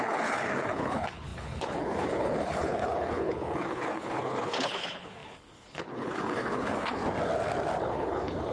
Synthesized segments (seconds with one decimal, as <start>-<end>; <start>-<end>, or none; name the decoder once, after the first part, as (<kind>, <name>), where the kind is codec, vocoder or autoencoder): 0.0-7.0 (codec, HILCodec); 7.8-8.5